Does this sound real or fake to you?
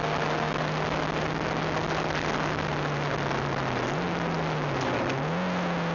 real